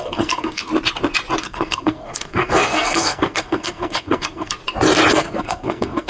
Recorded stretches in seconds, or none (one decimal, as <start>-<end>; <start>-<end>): 0.7-1.4; 4.6-5.1